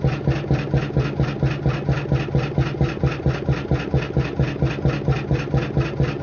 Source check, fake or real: real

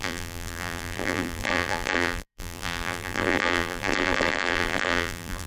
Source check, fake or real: fake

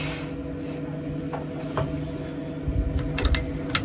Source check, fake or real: real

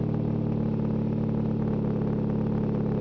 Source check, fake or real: real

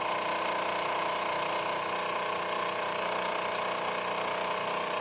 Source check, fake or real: real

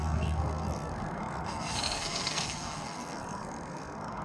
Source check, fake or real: fake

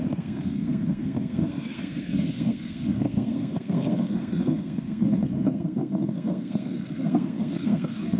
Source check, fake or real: fake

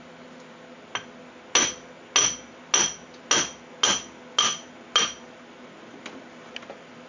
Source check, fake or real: real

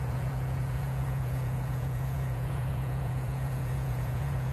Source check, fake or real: fake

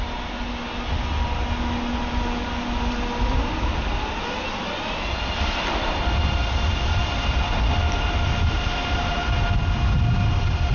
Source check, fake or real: real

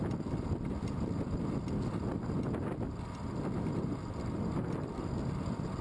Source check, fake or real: real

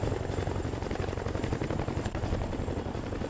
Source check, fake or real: real